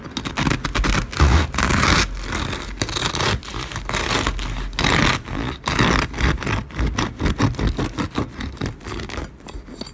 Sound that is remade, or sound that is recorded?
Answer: recorded